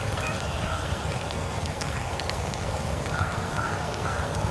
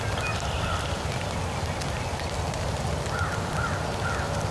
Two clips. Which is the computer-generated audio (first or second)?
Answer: first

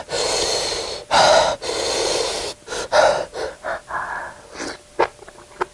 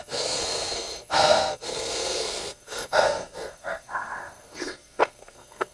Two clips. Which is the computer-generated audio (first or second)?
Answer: second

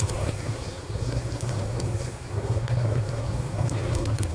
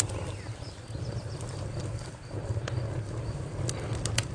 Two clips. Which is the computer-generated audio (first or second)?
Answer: first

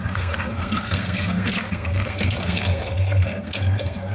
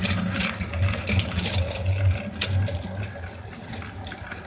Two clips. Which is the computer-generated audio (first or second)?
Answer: first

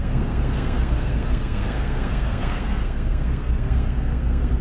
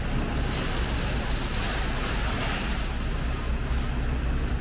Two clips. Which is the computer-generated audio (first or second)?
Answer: first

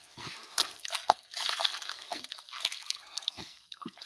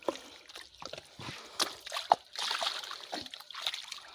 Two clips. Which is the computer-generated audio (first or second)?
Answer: first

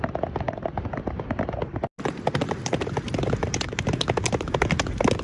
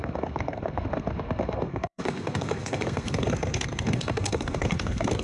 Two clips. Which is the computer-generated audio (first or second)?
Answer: second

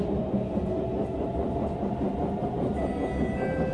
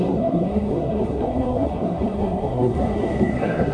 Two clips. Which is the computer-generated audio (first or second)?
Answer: second